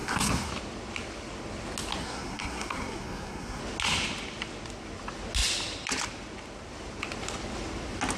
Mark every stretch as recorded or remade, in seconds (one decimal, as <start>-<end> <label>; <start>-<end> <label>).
0.0-0.5 remade; 0.5-2.0 recorded; 2.0-3.6 remade; 3.6-8.2 recorded